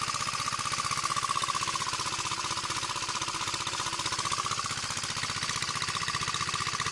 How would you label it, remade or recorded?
recorded